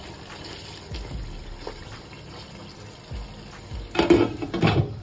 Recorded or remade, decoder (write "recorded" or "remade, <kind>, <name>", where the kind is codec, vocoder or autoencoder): recorded